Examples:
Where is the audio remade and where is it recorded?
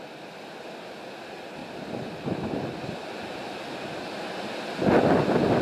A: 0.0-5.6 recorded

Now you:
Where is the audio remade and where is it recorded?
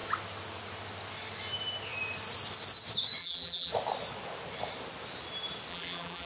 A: 0.0-3.2 recorded; 3.2-3.7 remade; 3.7-5.7 recorded; 5.7-6.3 remade